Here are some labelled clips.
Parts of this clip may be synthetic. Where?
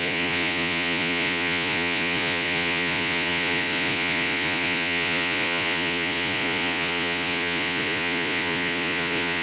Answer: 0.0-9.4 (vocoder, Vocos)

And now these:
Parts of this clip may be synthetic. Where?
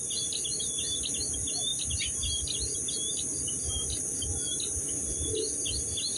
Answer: none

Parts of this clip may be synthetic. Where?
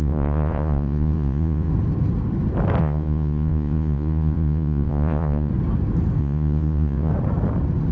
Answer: 0.0-1.7 (vocoder, Vocos); 2.8-5.5; 6.2-7.1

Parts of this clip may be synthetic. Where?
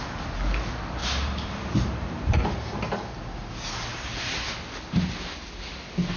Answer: 1.0-2.8 (vocoder, BigVGAN v2); 3.9-4.5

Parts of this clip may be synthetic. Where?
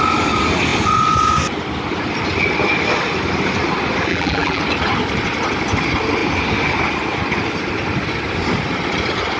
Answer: 4.1-4.6 (vocoder, BigVGAN v2)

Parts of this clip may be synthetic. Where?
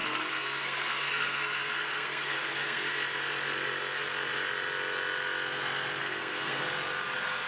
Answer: 0.0-2.9 (codec, SNAC); 6.0-6.6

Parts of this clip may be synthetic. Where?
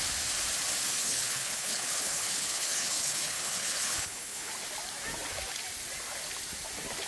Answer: 1.0-4.5 (codec, HILCodec)